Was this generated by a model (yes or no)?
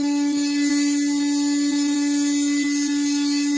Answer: no